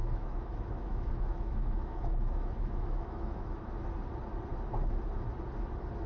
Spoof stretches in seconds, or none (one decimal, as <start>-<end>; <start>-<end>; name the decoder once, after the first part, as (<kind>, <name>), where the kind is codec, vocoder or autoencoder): 0.0-3.7 (autoencoder, DAC-VAE)